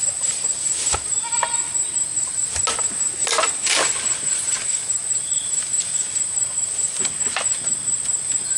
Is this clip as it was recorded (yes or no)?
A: yes